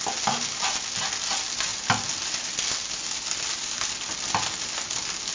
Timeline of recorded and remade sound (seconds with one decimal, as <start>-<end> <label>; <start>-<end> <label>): 0.0-5.3 recorded